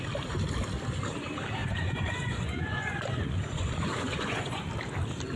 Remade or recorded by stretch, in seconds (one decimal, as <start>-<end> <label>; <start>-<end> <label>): 0.0-1.6 recorded; 1.6-4.7 remade; 4.7-5.4 recorded